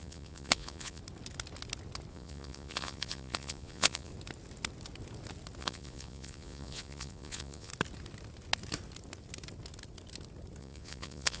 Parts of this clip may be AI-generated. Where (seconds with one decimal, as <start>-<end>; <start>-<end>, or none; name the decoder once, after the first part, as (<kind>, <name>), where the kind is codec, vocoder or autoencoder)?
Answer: 0.0-1.0 (vocoder, Vocos); 2.1-4.1; 5.6-7.7; 10.6-11.4